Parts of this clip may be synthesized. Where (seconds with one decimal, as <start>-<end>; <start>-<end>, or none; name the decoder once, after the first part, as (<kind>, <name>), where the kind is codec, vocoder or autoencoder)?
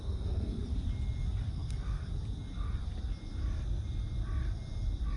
0.0-0.6 (codec, SNAC); 1.5-2.0